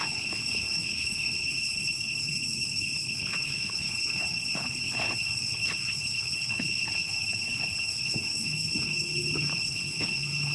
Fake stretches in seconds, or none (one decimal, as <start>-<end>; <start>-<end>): 0.0-10.5